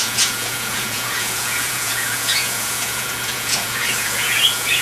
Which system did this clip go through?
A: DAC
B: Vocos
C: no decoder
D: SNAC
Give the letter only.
B